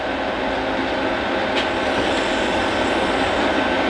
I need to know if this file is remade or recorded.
recorded